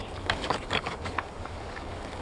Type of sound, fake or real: fake